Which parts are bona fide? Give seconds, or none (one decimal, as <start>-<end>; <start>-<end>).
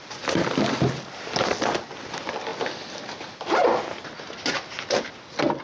0.0-5.6